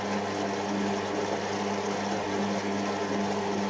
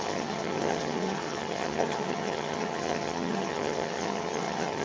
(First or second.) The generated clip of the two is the second